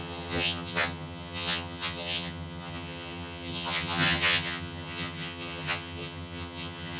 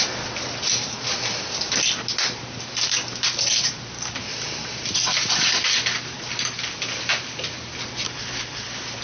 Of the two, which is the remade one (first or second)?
first